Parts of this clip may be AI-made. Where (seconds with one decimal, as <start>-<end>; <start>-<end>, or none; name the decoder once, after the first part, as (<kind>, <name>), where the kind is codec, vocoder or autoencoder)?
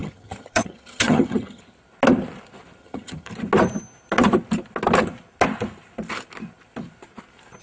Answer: 0.0-1.6 (vocoder, HiFi-GAN); 2.8-3.3